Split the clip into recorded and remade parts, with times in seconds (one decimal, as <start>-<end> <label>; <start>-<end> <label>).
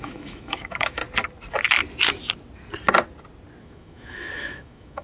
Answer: 0.0-1.0 remade; 1.0-3.6 recorded; 3.6-5.0 remade